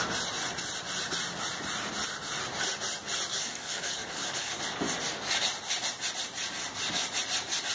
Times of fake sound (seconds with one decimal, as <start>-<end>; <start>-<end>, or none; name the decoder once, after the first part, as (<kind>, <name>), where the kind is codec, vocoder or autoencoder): 3.3-4.6 (codec, DAC)